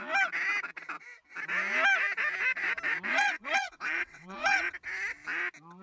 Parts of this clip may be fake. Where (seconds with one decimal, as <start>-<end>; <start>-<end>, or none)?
3.1-4.7